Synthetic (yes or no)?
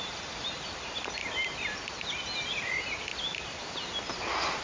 no